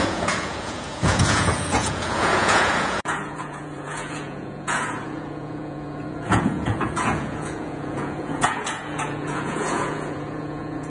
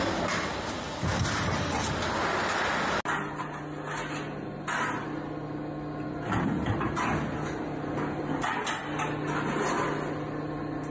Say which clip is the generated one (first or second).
first